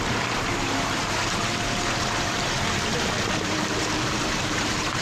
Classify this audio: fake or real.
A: fake